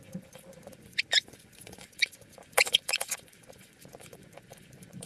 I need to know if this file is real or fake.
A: fake